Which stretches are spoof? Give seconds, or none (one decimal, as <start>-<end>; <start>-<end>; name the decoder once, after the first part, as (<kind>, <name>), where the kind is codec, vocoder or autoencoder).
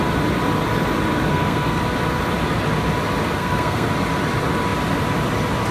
1.3-1.8 (codec, SNAC); 3.4-3.9